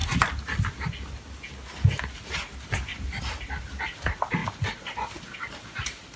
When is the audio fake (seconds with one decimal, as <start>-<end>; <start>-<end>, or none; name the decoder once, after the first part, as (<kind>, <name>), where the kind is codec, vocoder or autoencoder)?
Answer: 0.0-0.9 (vocoder, BigVGAN v2); 2.9-3.7; 4.4-5.1